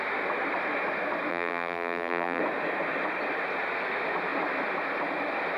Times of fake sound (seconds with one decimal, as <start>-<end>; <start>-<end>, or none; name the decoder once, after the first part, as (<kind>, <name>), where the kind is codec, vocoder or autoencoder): 1.3-2.4 (vocoder, BigVGAN v2)